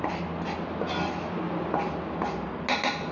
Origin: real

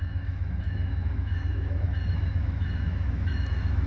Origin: fake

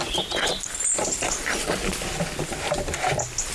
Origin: real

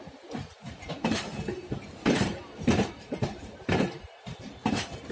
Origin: fake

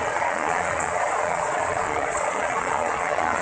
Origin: fake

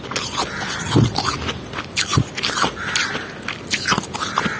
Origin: real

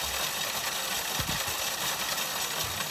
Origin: real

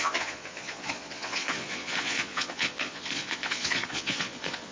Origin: fake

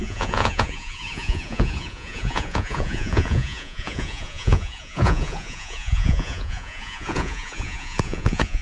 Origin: fake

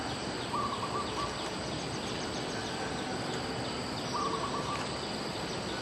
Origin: real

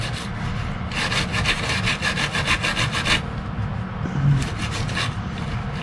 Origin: real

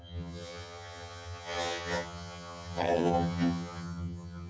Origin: fake